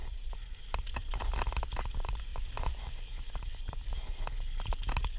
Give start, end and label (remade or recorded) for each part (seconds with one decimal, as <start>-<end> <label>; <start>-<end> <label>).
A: 0.0-1.0 remade; 1.0-1.9 recorded; 1.9-5.2 remade